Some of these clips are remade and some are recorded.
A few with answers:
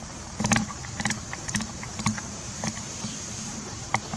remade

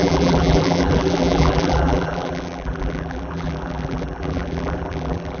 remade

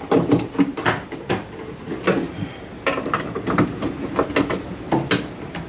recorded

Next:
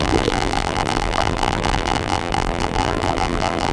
remade